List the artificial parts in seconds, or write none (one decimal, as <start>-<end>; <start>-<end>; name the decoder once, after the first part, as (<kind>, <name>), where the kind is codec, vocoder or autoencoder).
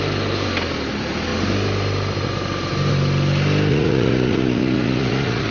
3.7-5.5 (vocoder, Vocos)